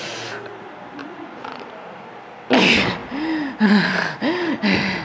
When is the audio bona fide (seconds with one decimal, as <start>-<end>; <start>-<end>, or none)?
0.0-1.0; 2.0-5.0